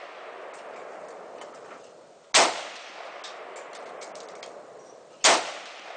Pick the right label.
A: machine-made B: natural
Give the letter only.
B